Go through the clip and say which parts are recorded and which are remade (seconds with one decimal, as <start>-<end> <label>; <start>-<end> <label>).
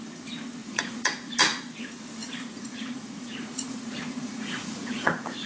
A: 0.0-0.6 recorded; 0.6-1.3 remade; 1.3-2.2 recorded; 2.2-5.5 remade